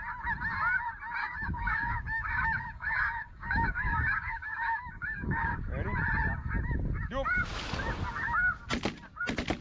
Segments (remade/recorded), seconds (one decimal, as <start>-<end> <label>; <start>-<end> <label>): 0.0-1.2 recorded; 1.2-5.6 remade; 5.6-9.6 recorded